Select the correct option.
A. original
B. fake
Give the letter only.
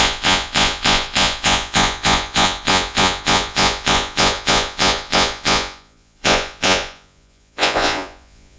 B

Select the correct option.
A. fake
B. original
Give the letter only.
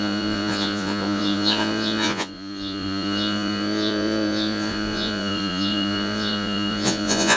A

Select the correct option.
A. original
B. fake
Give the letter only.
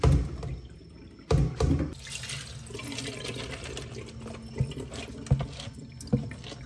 A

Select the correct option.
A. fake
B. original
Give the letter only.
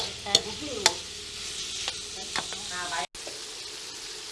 B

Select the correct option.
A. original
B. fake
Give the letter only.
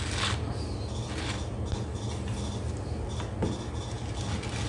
A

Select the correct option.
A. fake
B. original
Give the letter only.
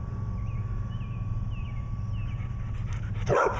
B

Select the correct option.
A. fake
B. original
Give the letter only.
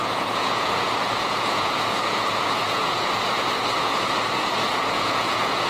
A